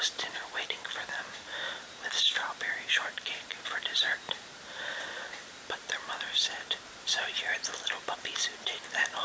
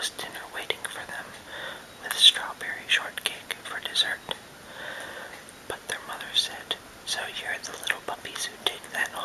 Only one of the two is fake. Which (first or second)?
first